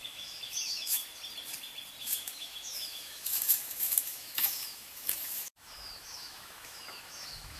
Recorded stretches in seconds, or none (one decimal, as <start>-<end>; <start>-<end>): 1.0-2.0